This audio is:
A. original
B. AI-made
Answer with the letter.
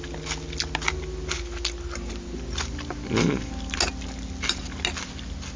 A